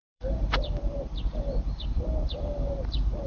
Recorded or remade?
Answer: remade